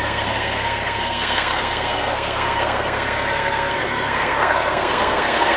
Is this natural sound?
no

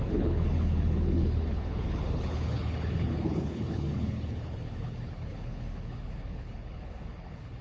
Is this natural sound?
no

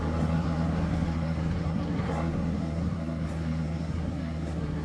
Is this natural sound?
no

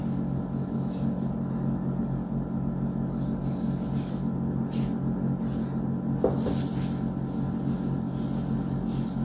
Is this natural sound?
yes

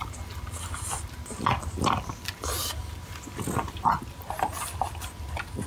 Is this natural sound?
yes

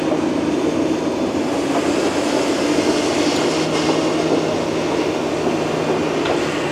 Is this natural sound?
yes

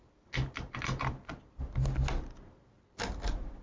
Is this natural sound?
yes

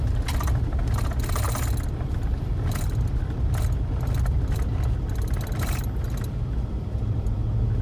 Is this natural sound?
yes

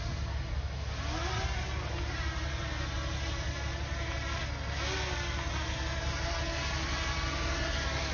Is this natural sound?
yes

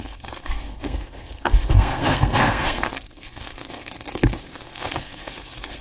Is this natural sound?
no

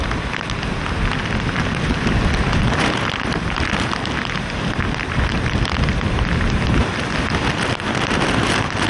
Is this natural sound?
yes